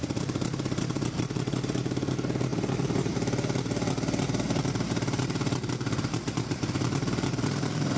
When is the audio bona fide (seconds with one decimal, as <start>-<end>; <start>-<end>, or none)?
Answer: 2.5-4.6